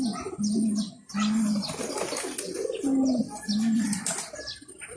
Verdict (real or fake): real